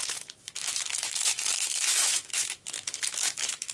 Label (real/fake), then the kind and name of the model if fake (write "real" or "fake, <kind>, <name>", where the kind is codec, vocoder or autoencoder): fake, autoencoder, DAC-VAE